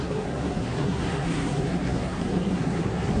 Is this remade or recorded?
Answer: remade